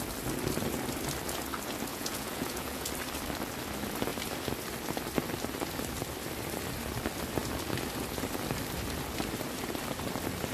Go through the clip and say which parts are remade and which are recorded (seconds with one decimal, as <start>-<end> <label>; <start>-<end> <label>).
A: 0.0-1.9 recorded; 1.9-2.9 remade; 2.9-10.5 recorded